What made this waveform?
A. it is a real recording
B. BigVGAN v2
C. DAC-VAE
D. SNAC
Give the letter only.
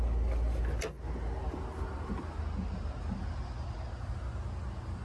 A